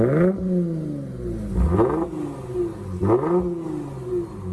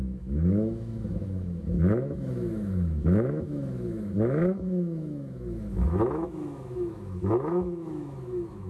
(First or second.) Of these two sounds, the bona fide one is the first